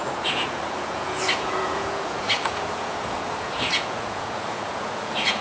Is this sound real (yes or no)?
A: no